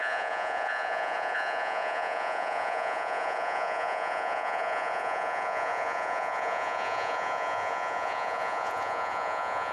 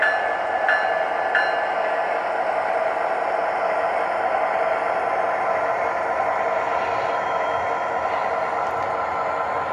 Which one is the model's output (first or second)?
first